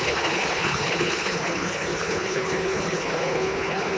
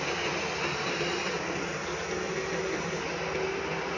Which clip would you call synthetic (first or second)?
first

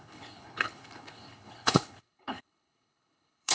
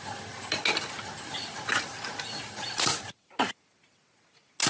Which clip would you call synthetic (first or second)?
first